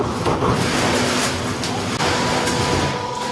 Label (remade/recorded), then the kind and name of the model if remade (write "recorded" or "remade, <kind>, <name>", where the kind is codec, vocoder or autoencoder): recorded